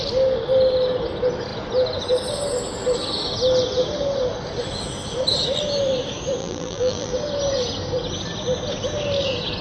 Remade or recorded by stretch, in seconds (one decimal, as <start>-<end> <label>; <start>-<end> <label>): 0.0-6.4 recorded; 6.4-7.1 remade; 7.1-9.6 recorded